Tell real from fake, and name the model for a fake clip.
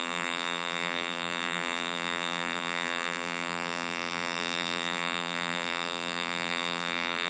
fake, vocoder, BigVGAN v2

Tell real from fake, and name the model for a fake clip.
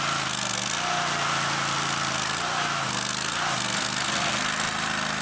real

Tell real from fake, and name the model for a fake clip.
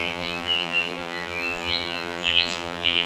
fake, vocoder, BigVGAN v2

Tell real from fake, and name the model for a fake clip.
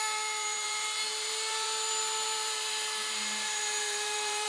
fake, vocoder, BigVGAN v2